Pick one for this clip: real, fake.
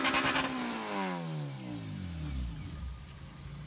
real